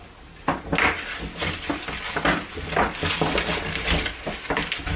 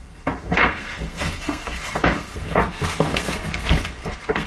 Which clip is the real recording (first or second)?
first